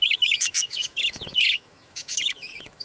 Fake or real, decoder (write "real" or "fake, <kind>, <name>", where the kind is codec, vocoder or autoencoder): fake, autoencoder, DAC-VAE